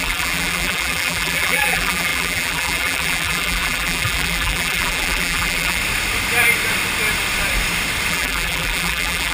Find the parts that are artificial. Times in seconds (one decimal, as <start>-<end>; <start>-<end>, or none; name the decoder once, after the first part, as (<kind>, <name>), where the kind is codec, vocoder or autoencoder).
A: 0.0-5.8 (vocoder, BigVGAN v2); 8.1-9.3